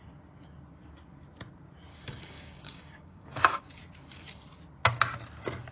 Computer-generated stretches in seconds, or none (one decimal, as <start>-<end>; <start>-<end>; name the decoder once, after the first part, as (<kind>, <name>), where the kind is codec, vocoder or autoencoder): 1.9-3.6 (codec, DAC)